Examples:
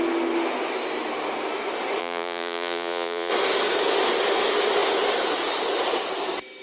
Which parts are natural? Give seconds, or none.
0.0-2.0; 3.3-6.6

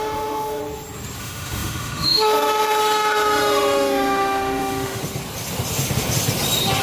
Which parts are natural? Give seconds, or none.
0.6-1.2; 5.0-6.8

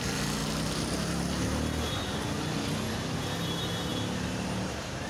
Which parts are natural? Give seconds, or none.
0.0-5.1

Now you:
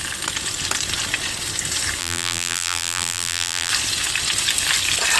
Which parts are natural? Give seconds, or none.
0.0-2.0; 3.7-5.2

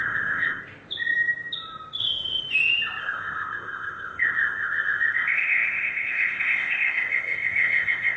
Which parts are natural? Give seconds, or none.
0.6-2.0; 2.4-3.0